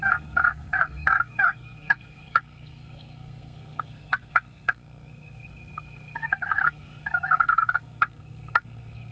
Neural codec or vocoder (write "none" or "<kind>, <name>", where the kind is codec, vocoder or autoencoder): codec, SNAC